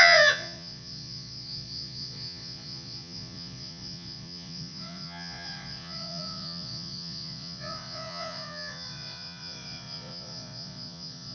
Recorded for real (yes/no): no